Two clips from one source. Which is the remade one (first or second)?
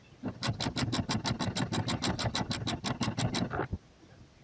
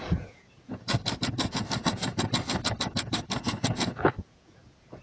second